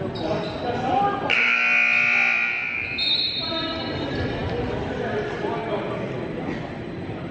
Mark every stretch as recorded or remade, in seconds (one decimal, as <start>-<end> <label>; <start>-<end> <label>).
0.0-7.3 recorded